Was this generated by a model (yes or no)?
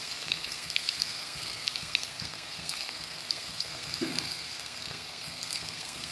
yes